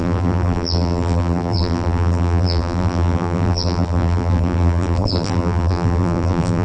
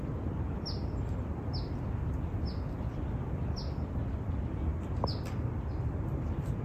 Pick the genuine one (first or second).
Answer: second